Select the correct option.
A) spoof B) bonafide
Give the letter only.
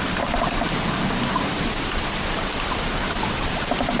B